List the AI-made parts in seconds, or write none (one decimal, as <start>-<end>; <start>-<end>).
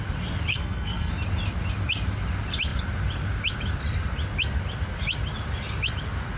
0.5-1.1